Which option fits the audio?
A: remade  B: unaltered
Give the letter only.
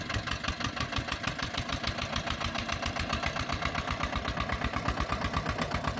A